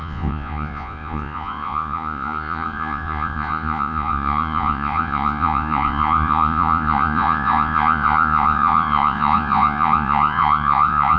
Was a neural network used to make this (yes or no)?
yes